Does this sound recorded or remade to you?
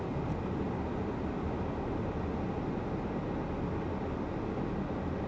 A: recorded